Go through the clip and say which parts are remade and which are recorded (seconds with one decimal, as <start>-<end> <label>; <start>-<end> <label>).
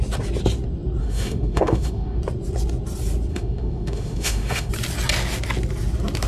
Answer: 0.0-1.0 recorded; 1.0-2.2 remade; 2.2-3.3 recorded; 3.3-4.7 remade; 4.7-6.3 recorded